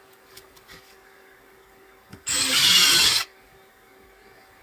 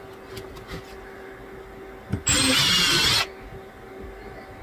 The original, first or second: second